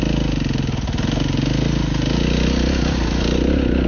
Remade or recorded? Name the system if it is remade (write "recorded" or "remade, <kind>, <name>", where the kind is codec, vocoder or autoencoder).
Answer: recorded